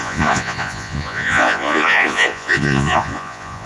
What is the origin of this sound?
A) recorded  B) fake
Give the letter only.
B